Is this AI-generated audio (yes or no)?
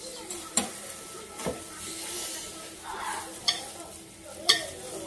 no